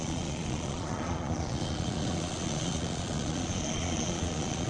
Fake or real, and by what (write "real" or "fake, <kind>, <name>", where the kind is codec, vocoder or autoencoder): fake, vocoder, Vocos